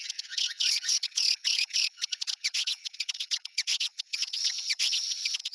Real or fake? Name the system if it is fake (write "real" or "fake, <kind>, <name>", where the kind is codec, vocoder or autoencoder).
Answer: fake, vocoder, WaveNeXt